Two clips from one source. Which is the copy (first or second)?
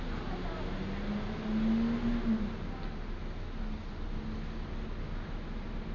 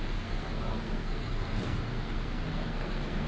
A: second